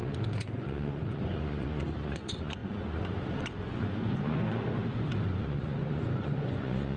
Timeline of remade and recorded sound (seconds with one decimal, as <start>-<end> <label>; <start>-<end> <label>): 0.0-7.0 remade